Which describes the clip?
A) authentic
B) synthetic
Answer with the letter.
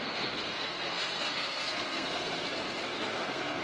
B